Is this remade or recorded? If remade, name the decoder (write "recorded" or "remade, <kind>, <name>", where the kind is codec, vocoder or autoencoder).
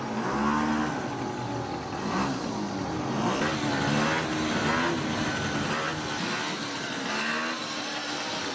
recorded